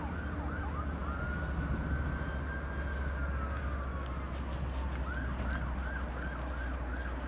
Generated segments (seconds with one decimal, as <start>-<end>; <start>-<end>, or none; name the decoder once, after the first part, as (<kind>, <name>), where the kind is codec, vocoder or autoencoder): none